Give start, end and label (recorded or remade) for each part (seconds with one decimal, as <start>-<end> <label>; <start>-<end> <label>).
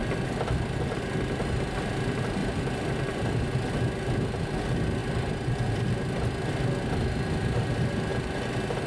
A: 0.0-1.4 remade; 1.4-2.4 recorded; 2.4-3.3 remade; 3.3-8.9 recorded